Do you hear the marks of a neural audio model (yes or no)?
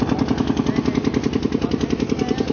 no